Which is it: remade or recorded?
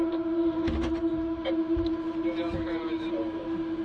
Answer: recorded